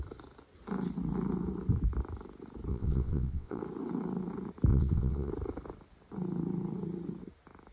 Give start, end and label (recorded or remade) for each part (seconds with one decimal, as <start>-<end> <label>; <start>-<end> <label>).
0.0-2.7 recorded; 2.7-3.6 remade; 3.6-4.7 recorded; 4.7-5.3 remade; 5.3-7.7 recorded